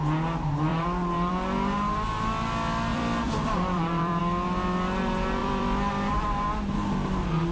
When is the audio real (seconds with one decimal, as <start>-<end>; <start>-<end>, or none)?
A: 0.0-0.7; 1.3-2.9; 4.2-5.4; 6.1-7.5